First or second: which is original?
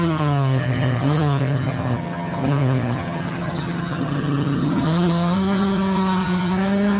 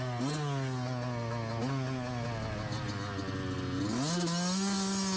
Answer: second